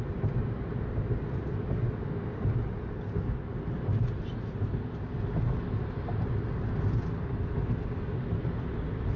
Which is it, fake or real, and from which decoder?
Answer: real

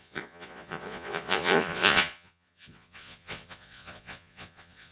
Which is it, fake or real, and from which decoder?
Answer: fake, vocoder, Vocos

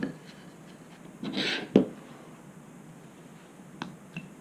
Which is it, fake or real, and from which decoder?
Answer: real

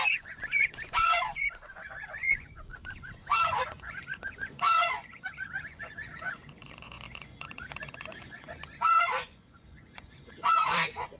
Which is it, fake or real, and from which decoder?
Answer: fake, vocoder, Vocos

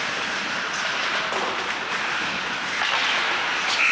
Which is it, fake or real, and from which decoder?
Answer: real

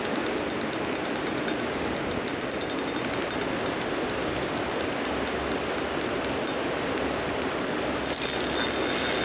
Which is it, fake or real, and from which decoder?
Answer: real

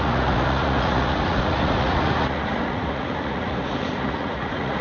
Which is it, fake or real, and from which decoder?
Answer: fake, vocoder, Vocos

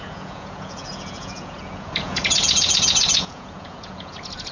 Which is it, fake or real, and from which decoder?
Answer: fake, vocoder, Vocos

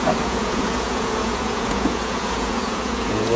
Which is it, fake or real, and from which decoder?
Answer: fake, vocoder, Vocos